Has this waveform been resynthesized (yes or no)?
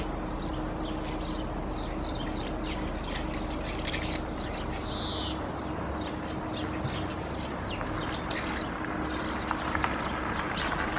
no